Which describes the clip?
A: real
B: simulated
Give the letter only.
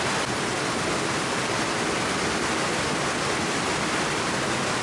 A